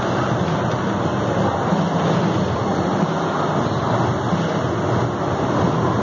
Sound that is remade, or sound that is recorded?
recorded